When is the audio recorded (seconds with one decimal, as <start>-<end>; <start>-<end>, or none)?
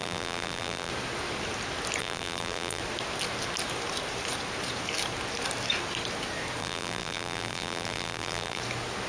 0.9-2.0; 2.8-6.6; 8.6-9.1